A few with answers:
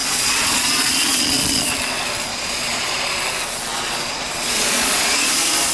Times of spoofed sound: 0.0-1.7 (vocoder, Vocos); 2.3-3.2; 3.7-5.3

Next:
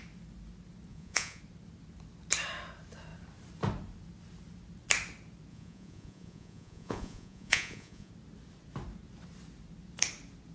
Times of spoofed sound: 0.9-1.4 (vocoder, Vocos); 5.5-8.1

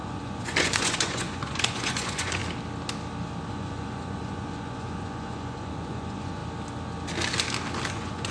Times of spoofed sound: 0.0-2.4 (vocoder, Vocos); 3.5-6.4; 7.9-8.3

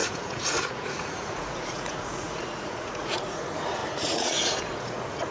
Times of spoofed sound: 0.0-5.3 (vocoder, Vocos)

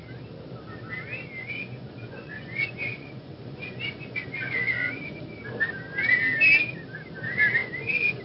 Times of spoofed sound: 1.4-5.2 (vocoder, Vocos); 7.6-8.2

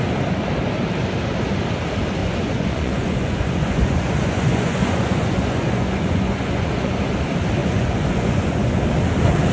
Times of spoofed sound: 2.2-7.0 (vocoder, Vocos); 7.6-8.8

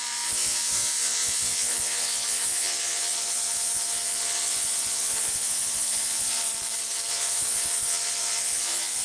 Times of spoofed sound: 0.0-6.5 (vocoder, Vocos); 7.1-9.0

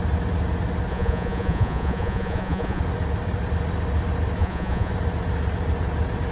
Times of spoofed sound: 0.9-2.8 (vocoder, Vocos); 4.4-4.9